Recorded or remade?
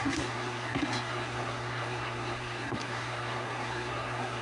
remade